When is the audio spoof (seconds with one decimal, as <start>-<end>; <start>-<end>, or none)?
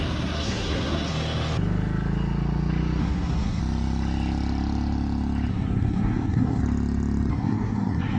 0.0-1.1; 3.0-3.6; 5.5-6.6; 7.3-8.2